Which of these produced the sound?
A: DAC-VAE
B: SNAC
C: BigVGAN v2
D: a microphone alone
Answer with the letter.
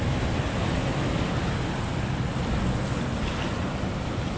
D